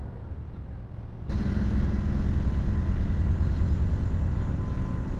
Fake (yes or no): no